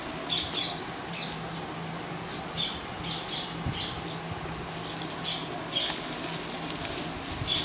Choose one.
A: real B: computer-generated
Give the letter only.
A